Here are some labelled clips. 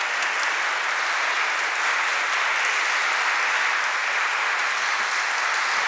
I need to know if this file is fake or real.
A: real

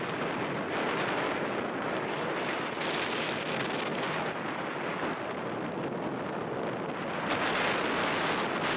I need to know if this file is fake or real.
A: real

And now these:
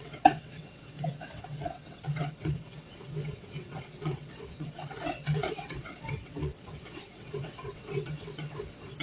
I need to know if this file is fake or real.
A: fake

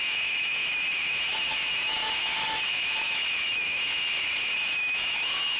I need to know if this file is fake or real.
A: fake